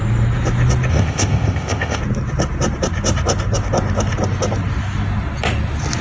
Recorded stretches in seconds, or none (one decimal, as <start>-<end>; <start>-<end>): 0.0-0.9; 2.0-6.0